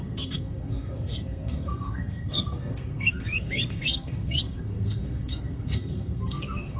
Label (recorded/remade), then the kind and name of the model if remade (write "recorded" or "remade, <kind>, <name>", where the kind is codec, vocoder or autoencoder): remade, codec, SNAC